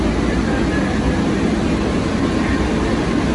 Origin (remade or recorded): recorded